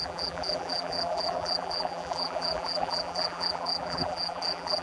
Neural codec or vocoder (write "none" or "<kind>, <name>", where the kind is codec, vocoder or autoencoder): vocoder, BigVGAN v2